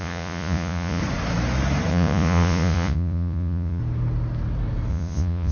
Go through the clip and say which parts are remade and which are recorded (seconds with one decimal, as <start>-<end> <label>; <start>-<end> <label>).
0.0-1.0 remade; 1.0-1.9 recorded; 1.9-3.8 remade; 3.8-4.9 recorded; 4.9-5.5 remade